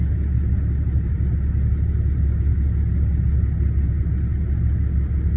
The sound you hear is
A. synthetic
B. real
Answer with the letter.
B